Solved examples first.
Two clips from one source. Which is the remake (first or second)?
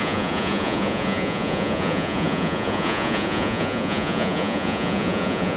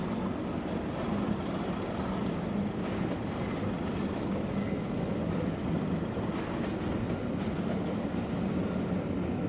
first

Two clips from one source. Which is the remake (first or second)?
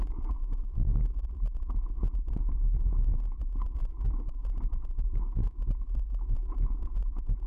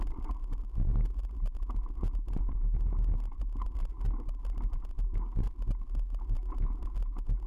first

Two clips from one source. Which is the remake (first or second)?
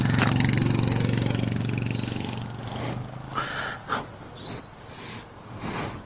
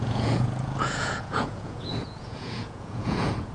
second